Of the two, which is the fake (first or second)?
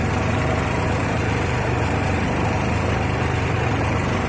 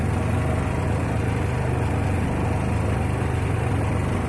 first